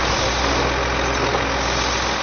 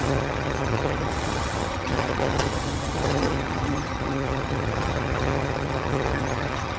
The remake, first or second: second